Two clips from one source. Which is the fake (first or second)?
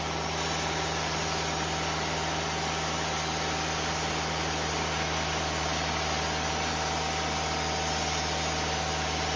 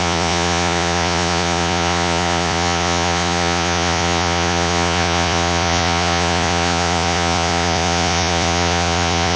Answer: second